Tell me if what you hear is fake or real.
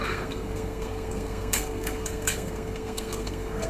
fake